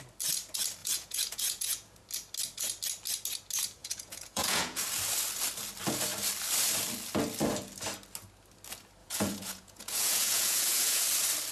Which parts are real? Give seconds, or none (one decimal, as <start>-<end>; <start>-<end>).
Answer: 0.0-0.8; 2.0-3.8; 4.8-9.0; 11.0-11.5